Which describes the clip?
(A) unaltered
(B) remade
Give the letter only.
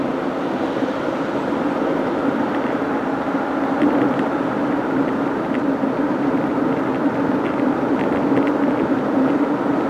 B